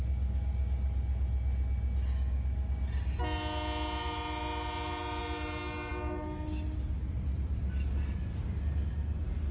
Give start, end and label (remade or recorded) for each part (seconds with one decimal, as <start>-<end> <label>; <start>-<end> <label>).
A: 0.0-9.5 recorded